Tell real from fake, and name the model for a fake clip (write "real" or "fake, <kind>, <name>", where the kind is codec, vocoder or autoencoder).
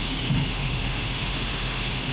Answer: fake, autoencoder, DAC-VAE